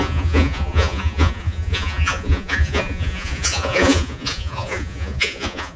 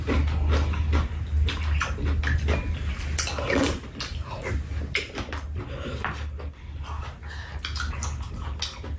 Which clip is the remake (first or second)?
first